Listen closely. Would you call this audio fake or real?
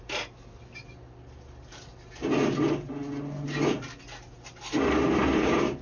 real